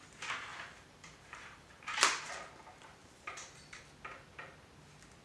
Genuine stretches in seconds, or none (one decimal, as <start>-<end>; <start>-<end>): 0.0-0.5; 2.3-3.0; 3.8-5.2